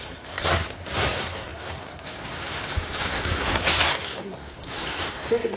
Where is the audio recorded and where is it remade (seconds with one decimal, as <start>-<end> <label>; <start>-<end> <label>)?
0.0-5.6 remade